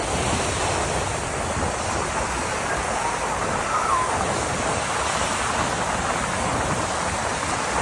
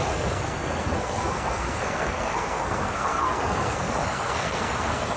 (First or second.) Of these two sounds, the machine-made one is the second